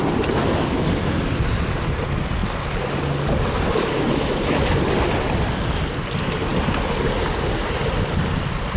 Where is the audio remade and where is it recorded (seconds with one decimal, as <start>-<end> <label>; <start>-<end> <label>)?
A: 0.0-8.8 recorded